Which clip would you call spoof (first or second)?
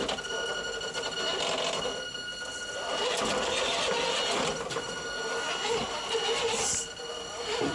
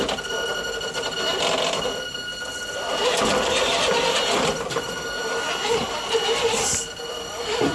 second